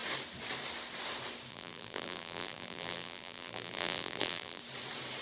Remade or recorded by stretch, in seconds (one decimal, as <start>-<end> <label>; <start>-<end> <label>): 0.0-1.5 recorded; 1.5-4.6 remade; 4.6-5.2 recorded